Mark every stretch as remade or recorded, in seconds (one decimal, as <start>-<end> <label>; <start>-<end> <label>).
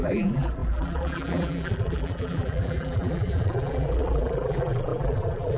0.0-5.6 remade